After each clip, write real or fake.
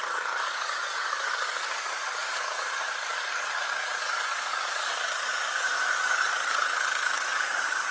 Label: fake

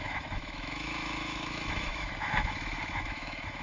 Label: fake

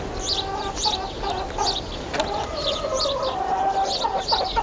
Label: real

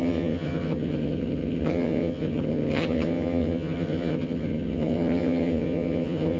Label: fake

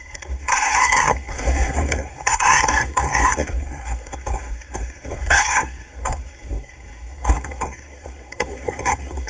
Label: fake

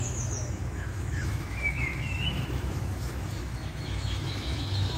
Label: fake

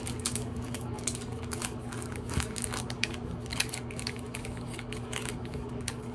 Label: fake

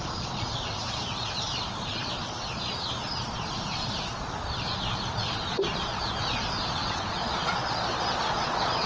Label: fake